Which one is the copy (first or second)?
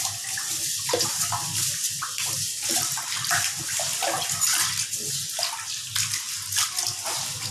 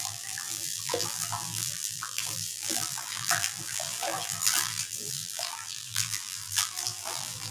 second